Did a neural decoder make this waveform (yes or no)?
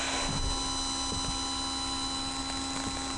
no